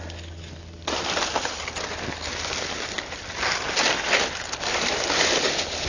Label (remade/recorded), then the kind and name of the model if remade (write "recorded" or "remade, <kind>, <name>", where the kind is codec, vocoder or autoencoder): recorded